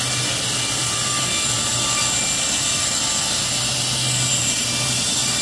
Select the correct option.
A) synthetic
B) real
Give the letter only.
B